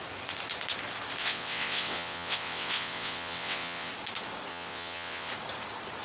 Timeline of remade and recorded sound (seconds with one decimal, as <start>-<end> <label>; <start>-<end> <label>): 0.0-1.2 recorded; 1.2-3.9 remade; 3.9-4.5 recorded; 4.5-5.3 remade; 5.3-6.0 recorded